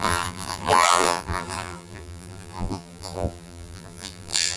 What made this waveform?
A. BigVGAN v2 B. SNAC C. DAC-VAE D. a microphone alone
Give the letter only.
A